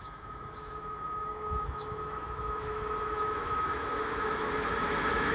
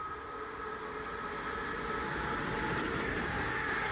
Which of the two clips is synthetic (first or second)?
first